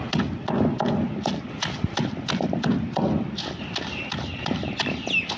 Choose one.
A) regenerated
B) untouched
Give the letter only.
B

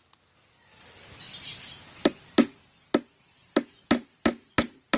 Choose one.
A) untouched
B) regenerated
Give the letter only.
A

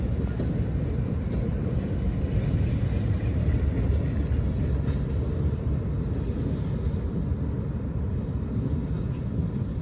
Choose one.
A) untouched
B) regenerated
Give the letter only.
A